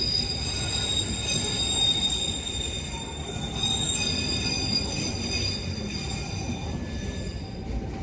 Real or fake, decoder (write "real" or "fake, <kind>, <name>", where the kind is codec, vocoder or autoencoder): real